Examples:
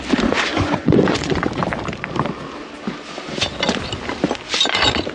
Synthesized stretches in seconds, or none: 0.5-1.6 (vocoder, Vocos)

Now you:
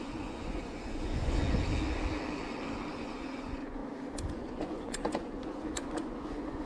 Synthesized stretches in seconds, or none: 0.0-1.4 (vocoder, Vocos); 2.9-3.8; 4.3-6.7

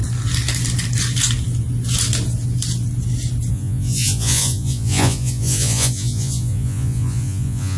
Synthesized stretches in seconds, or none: 3.5-7.8 (vocoder, Vocos)

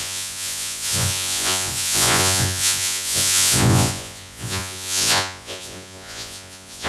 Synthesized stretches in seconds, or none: 0.0-6.9 (vocoder, Vocos)

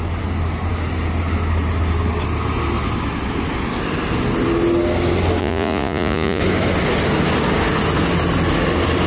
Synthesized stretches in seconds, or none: 5.4-6.4 (vocoder, Vocos)

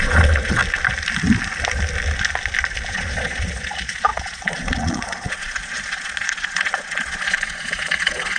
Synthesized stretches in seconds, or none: 0.0-0.6 (vocoder, Vocos); 2.9-8.4

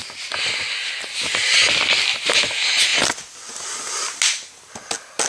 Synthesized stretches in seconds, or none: none